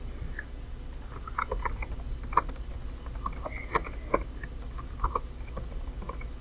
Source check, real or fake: real